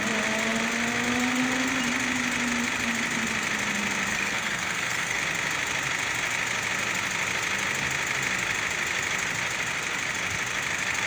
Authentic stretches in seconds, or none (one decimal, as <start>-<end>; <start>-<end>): 0.0-4.1; 5.2-11.1